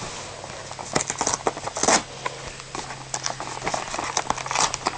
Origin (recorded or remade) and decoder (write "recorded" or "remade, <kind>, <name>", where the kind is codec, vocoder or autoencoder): recorded